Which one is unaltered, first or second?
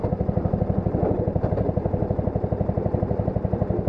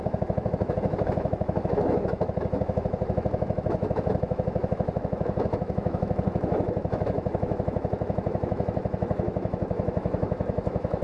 first